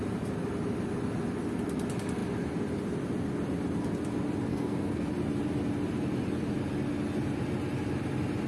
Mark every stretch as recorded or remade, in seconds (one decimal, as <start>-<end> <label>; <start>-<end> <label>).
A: 0.0-4.5 recorded; 4.5-5.1 remade; 5.1-8.5 recorded